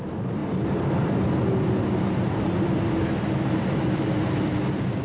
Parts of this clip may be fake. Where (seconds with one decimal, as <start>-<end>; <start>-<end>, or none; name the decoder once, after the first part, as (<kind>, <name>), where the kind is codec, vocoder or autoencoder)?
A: none